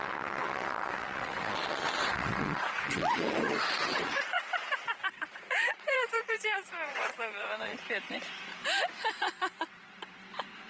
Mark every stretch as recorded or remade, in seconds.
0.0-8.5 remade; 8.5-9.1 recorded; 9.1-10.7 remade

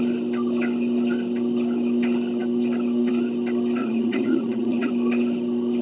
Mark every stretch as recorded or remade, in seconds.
0.0-3.8 recorded; 3.8-4.9 remade; 4.9-5.8 recorded